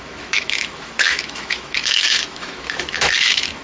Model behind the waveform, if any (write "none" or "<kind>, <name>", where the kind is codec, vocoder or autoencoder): autoencoder, DAC-VAE